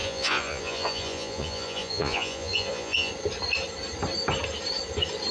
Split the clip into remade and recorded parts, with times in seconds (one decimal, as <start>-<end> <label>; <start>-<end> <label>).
0.0-3.1 remade; 3.1-5.3 recorded